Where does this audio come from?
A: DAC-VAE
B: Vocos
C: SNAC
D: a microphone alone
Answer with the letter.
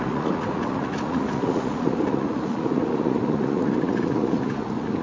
B